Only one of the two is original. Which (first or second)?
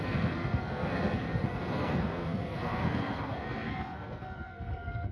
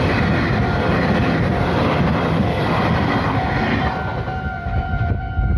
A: second